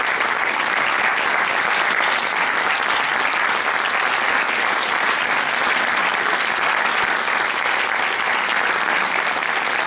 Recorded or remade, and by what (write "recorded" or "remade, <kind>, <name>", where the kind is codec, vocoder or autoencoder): recorded